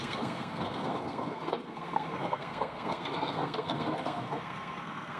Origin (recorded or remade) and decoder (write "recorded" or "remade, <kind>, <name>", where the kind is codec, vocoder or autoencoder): remade, codec, SNAC